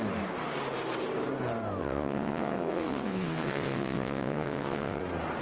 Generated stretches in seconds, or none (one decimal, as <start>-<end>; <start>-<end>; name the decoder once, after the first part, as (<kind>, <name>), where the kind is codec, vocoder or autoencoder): 1.8-5.0 (vocoder, WaveNeXt)